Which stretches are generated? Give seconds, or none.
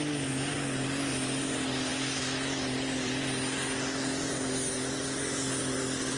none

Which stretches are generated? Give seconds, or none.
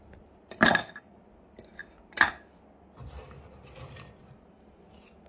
0.7-1.2 (codec, DAC)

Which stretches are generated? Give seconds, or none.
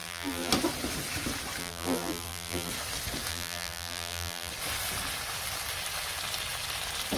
0.0-0.5 (vocoder, BigVGAN v2); 1.6-2.7; 3.3-4.5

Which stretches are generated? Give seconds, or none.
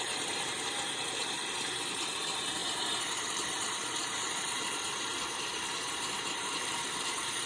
0.0-7.5 (vocoder, BigVGAN v2)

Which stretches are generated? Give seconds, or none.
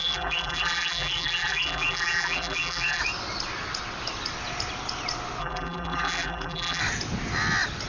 0.0-3.0 (vocoder, BigVGAN v2); 5.4-6.8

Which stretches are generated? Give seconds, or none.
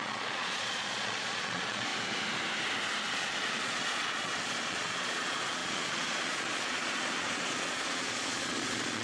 0.0-1.9 (vocoder, Vocos); 3.1-9.0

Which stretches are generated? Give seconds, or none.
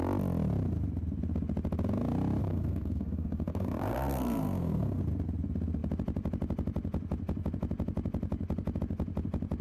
2.4-5.0 (codec, SNAC)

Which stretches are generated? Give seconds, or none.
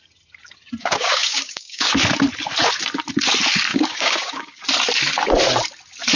0.8-1.9 (codec, DAC); 3.7-4.6